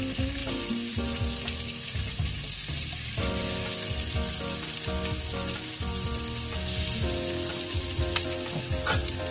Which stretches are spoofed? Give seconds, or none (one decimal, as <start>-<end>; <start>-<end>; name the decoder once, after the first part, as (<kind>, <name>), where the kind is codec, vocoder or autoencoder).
7.5-8.0 (vocoder, BigVGAN v2)